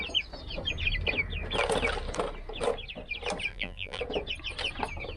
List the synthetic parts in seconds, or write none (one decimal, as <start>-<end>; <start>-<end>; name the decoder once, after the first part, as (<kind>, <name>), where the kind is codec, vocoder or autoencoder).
3.5-4.0 (vocoder, BigVGAN v2)

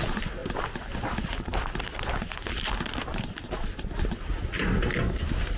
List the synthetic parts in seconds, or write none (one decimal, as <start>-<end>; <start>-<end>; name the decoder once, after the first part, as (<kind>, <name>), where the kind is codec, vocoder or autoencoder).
none

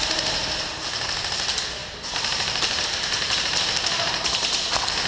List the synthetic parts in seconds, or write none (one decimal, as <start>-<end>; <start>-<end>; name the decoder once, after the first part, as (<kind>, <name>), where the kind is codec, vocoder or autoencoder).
1.8-4.1 (vocoder, BigVGAN v2)

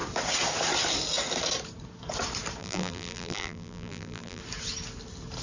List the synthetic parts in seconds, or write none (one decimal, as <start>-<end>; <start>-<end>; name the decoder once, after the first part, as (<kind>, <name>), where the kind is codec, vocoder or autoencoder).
2.6-4.4 (vocoder, BigVGAN v2)